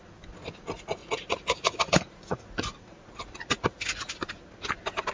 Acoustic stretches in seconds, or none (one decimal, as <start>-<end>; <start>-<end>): 0.0-1.0; 4.1-5.1